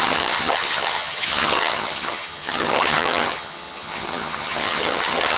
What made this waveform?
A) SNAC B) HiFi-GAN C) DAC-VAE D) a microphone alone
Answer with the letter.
B